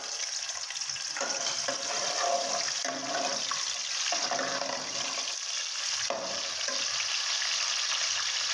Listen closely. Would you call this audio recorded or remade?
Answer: recorded